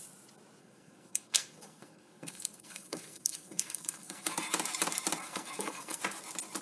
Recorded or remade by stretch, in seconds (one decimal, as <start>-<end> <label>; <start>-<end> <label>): 0.0-0.6 recorded; 0.6-4.5 remade; 4.5-5.2 recorded; 5.2-6.0 remade; 6.0-6.6 recorded